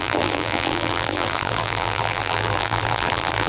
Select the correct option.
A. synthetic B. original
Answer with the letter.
A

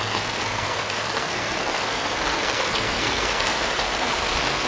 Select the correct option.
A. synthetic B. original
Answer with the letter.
A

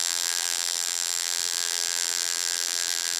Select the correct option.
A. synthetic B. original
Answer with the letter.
A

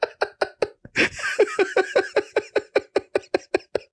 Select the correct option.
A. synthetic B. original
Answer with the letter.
B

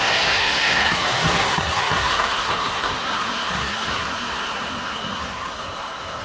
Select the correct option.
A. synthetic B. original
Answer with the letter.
A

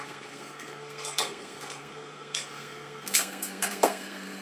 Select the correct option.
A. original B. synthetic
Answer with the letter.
B